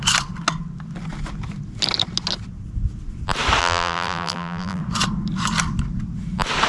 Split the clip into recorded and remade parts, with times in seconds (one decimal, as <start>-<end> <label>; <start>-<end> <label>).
0.0-3.6 recorded; 3.6-4.8 remade; 4.8-6.7 recorded